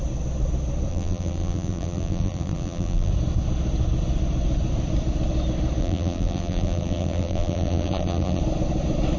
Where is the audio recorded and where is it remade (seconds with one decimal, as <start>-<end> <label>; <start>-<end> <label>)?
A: 0.0-0.9 recorded; 0.9-3.1 remade; 3.1-5.8 recorded; 5.8-8.4 remade; 8.4-9.2 recorded